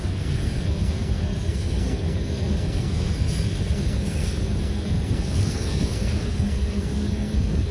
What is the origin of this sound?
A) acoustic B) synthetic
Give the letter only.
B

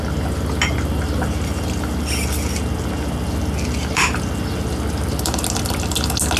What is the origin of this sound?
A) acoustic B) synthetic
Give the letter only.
A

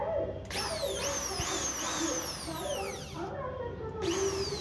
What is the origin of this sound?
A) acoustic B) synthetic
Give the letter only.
A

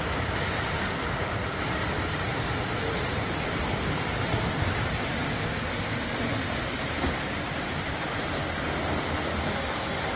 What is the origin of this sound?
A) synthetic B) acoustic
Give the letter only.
B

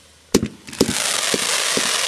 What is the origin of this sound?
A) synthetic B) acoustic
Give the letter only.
B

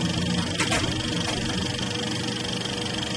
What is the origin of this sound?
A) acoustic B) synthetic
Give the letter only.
A